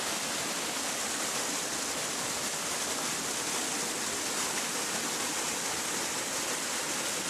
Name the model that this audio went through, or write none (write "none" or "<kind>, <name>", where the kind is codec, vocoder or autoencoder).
none